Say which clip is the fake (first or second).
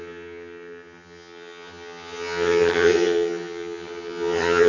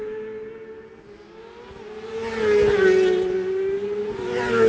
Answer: first